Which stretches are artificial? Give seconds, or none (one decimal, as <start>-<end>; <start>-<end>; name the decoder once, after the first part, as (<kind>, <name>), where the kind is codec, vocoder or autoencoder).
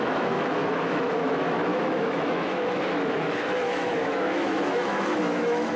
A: 0.0-5.8 (autoencoder, DAC-VAE)